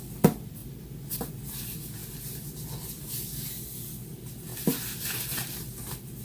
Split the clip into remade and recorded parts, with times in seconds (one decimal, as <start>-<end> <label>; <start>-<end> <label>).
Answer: 0.0-0.6 remade; 0.6-1.3 recorded; 1.3-2.0 remade; 2.0-3.2 recorded; 3.2-4.5 remade; 4.5-5.8 recorded; 5.8-6.2 remade